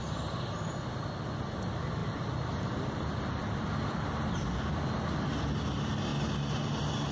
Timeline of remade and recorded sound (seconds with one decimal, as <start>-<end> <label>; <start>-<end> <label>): 0.0-7.1 recorded